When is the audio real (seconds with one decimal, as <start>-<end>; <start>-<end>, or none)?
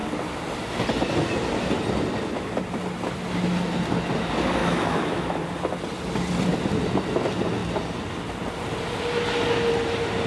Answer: 0.0-4.6; 5.4-10.3